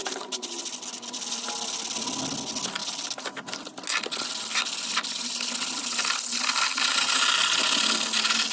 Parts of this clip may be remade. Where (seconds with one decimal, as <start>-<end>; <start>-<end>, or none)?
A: 0.0-0.6